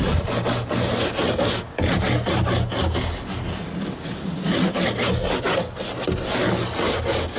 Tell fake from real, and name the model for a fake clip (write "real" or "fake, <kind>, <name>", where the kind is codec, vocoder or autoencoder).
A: real